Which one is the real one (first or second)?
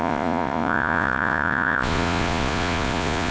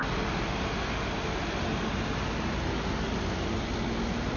second